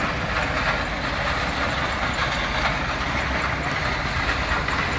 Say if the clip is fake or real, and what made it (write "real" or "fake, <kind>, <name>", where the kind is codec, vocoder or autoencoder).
real